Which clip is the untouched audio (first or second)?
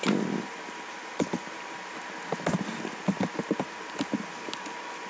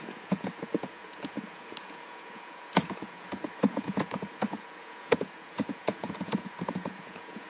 first